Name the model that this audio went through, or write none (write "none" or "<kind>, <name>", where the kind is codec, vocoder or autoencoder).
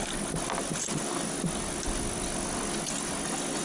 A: none